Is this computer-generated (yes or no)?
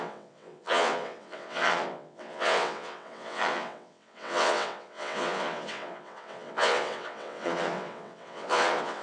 yes